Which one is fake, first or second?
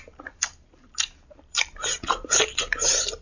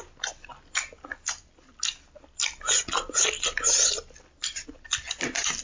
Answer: first